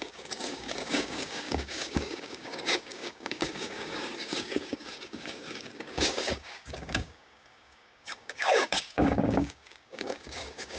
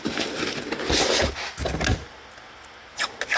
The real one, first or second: second